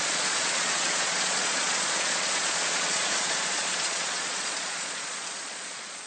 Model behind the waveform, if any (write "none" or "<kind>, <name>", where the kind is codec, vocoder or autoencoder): vocoder, Vocos